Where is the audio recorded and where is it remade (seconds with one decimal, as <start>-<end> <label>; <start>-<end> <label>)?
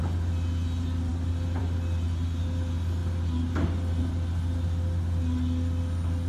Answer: 0.0-1.1 recorded; 1.1-1.6 remade; 1.6-6.3 recorded